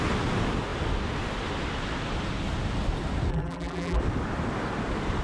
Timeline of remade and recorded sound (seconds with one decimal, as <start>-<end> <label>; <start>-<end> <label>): 0.0-3.3 recorded; 3.3-4.0 remade; 4.0-5.2 recorded